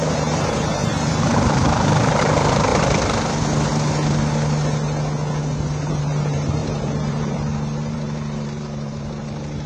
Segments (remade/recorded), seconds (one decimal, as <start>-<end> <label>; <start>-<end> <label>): 0.0-2.7 remade; 2.7-5.9 recorded; 5.9-9.7 remade